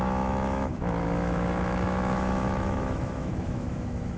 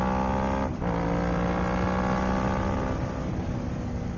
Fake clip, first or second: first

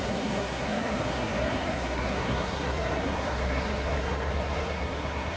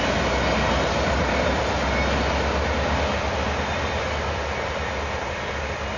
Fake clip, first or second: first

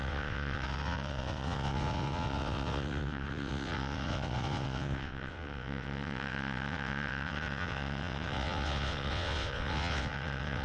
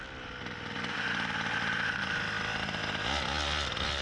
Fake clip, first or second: first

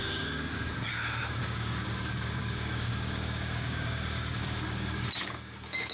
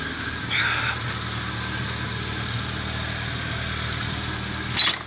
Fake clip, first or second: first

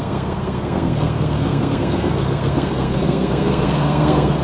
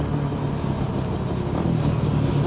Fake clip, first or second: first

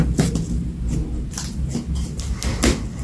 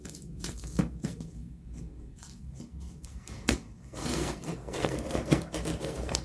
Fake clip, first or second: second